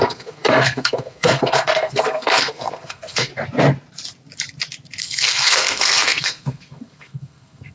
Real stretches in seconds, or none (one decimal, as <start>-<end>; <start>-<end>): 3.3-5.0